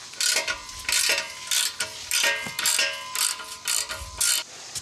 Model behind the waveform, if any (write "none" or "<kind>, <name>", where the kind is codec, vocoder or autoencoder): none